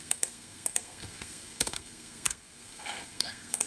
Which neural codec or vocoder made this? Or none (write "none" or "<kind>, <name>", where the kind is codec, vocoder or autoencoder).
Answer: codec, SNAC